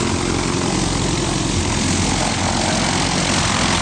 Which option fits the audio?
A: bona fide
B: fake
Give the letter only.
A